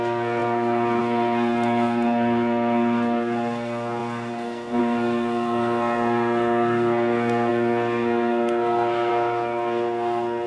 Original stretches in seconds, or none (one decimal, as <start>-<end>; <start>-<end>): none